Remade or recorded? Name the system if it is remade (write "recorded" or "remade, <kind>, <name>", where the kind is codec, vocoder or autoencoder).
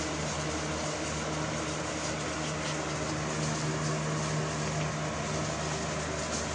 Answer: recorded